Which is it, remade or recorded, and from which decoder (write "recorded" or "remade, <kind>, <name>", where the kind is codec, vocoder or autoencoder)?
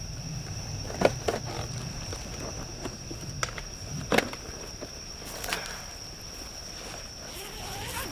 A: recorded